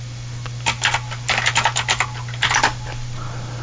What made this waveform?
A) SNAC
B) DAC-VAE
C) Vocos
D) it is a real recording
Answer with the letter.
D